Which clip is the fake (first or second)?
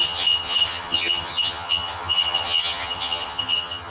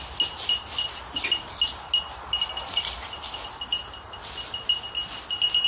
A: first